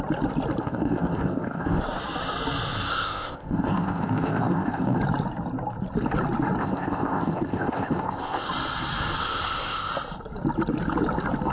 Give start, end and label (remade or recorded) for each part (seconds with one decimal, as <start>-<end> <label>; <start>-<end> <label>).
0.0-0.6 recorded; 0.6-1.8 remade; 1.8-2.9 recorded; 2.9-5.0 remade; 5.0-6.6 recorded; 6.6-8.5 remade; 8.5-9.2 recorded; 9.2-9.9 remade; 9.9-11.5 recorded